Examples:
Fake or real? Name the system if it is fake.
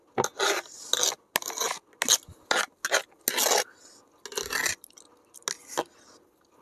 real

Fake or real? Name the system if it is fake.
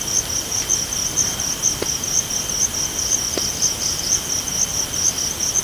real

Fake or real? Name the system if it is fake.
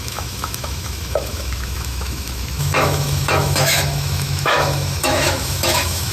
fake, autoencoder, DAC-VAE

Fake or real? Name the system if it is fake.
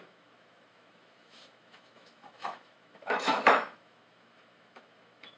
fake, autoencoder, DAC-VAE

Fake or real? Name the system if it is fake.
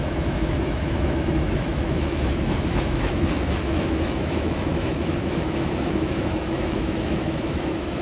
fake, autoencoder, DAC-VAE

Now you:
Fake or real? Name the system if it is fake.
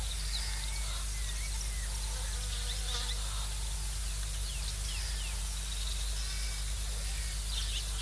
real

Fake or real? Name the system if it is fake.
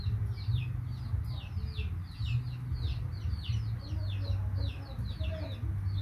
real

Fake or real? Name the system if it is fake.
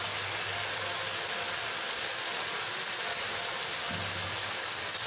real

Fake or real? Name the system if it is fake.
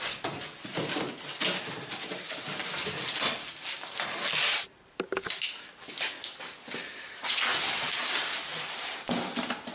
real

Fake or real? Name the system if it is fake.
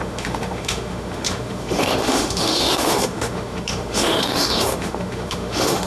fake, autoencoder, DAC-VAE